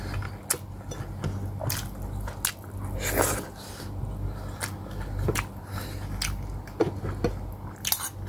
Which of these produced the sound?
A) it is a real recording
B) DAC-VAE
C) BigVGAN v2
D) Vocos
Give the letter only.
A